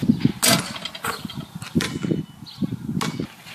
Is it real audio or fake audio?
real